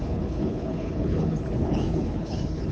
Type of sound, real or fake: fake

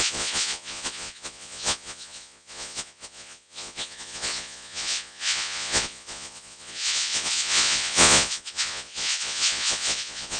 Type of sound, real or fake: fake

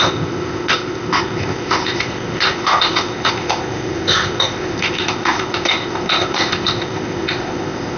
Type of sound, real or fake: fake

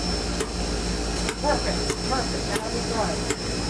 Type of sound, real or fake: real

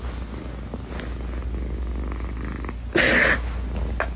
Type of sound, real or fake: real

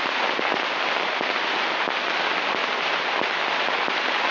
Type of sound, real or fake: real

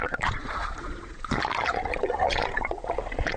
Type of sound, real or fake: fake